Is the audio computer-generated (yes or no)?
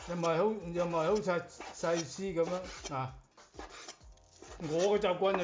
no